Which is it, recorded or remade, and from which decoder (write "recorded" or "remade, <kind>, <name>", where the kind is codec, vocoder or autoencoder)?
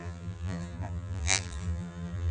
remade, vocoder, BigVGAN v2